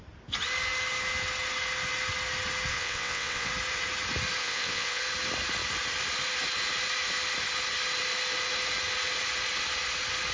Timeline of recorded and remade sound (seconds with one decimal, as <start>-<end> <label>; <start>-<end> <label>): 0.0-2.7 recorded; 2.7-3.5 remade; 3.5-4.4 recorded; 4.4-5.0 remade; 5.0-10.3 recorded